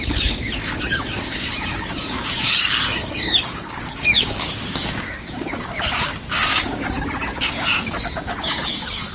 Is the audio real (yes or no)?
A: no